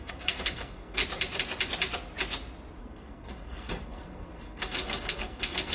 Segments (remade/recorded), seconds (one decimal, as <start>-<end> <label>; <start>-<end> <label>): 0.0-1.0 remade; 1.0-2.8 recorded; 2.8-5.7 remade